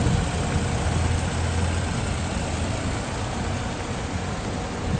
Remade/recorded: recorded